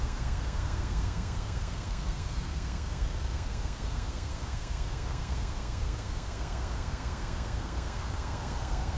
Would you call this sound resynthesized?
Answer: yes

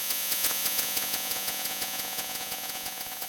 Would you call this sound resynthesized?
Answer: yes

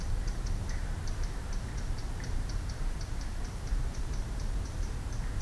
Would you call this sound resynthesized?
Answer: yes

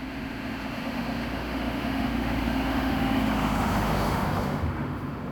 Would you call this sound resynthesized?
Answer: yes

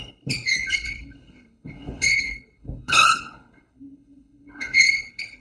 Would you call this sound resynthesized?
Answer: yes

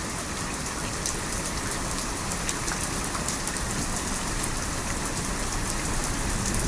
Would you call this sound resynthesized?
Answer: no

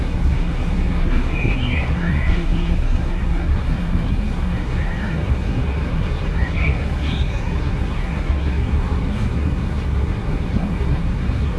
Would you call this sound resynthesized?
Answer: yes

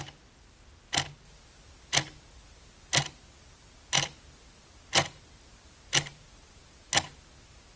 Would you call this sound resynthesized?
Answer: no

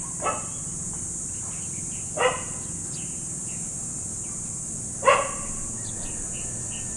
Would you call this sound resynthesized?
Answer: no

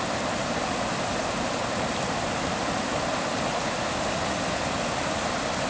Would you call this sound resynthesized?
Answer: no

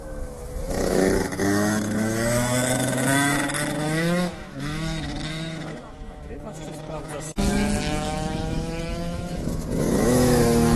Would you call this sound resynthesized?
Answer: yes